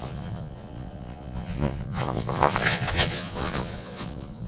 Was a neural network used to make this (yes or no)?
yes